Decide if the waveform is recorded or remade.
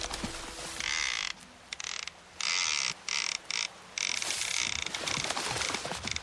recorded